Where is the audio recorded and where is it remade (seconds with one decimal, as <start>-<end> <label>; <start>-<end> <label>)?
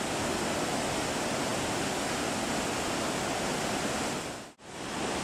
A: 0.0-5.2 recorded